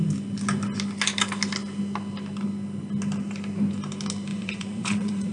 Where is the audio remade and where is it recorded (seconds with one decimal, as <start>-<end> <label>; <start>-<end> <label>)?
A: 0.0-4.3 recorded; 4.3-5.3 remade